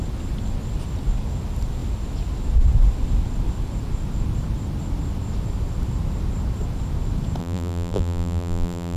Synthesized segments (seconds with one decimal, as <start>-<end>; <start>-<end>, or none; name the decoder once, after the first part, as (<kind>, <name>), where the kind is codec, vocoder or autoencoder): 7.4-9.0 (vocoder, BigVGAN v2)